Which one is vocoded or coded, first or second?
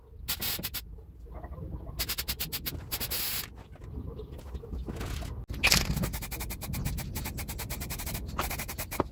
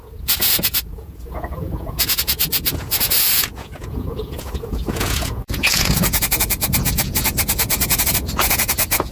second